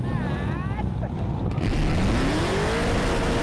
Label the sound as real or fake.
real